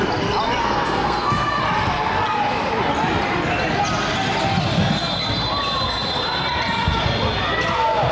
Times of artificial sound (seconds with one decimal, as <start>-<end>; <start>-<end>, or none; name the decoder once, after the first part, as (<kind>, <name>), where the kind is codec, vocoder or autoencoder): 0.6-1.6 (codec, SNAC)